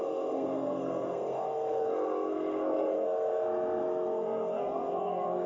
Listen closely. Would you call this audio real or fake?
fake